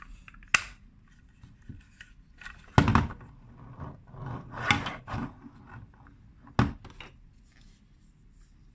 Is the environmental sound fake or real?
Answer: real